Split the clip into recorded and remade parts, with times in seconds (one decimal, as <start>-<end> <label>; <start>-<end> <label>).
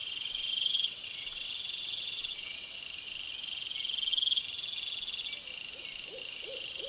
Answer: 0.0-2.8 remade; 2.8-6.9 recorded